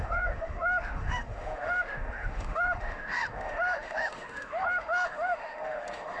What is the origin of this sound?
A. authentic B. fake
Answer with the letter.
B